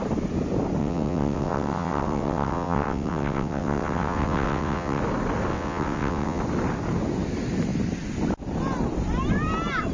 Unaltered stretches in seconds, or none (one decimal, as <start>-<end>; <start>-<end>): 0.0-0.8; 5.0-5.5; 6.4-9.9